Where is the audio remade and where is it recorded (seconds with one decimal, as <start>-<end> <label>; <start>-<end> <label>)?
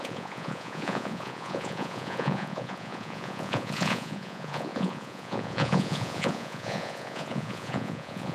0.0-8.3 remade